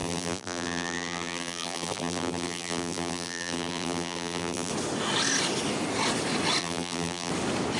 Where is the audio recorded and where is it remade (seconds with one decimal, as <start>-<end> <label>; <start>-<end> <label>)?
0.0-4.7 remade; 4.7-6.6 recorded; 6.6-7.3 remade; 7.3-7.8 recorded